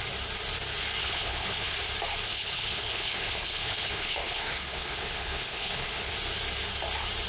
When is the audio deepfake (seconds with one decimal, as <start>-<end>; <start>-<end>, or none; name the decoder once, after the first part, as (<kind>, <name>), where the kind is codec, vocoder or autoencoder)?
1.0-1.7 (codec, HILCodec); 2.3-6.1